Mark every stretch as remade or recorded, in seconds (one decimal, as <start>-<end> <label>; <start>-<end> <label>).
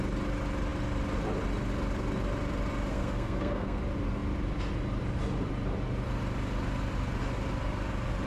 0.0-2.9 recorded; 2.9-3.8 remade; 3.8-8.3 recorded